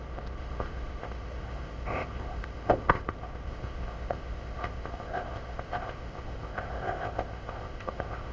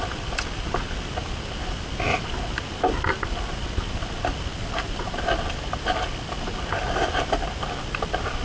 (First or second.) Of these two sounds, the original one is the second